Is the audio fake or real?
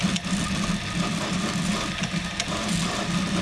real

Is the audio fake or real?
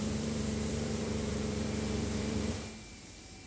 fake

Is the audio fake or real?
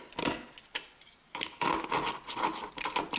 real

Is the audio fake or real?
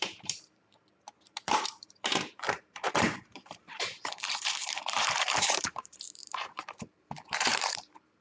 fake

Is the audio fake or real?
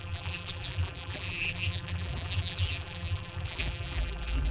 fake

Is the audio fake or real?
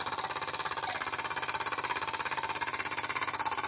real